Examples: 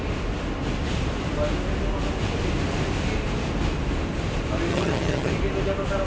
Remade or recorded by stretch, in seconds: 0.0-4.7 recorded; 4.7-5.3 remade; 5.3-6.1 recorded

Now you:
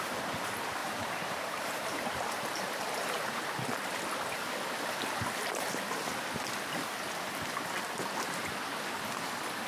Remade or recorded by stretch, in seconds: 0.0-0.8 recorded; 0.8-3.4 remade; 3.4-9.7 recorded